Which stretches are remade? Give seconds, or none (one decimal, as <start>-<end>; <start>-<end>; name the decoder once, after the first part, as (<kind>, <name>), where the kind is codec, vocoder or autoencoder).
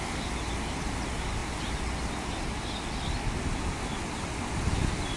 none